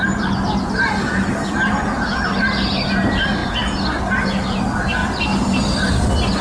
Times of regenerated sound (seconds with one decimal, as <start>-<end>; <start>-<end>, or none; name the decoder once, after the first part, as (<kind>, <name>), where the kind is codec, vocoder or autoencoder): none